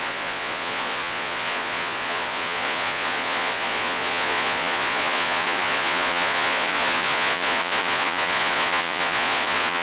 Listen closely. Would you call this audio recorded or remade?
remade